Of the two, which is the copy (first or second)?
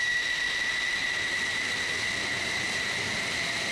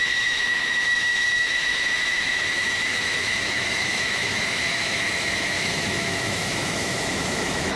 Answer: second